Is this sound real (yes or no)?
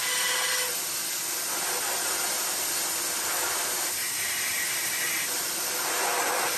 no